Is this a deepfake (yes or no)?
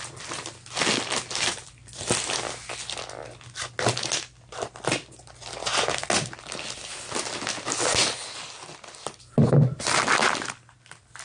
no